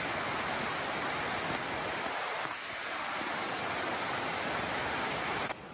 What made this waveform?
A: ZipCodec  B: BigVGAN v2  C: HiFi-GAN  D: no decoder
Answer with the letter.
D